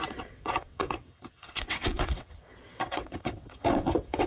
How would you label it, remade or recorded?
remade